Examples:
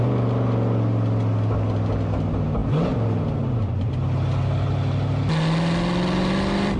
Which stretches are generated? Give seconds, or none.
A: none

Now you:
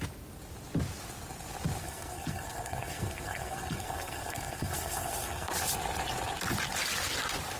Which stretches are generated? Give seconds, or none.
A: 1.8-5.5 (codec, SNAC)

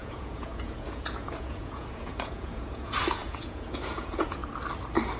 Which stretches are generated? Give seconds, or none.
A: 0.0-4.4 (vocoder, Vocos)

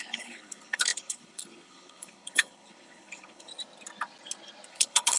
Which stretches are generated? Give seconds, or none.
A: 0.0-3.5 (codec, HILCodec); 4.7-5.2

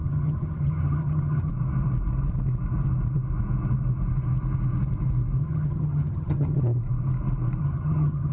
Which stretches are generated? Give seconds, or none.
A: 0.0-1.5 (vocoder, HiFi-GAN); 5.4-6.6; 7.6-8.3

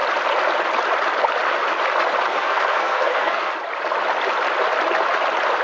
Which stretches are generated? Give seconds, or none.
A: 2.3-3.5 (codec, SNAC)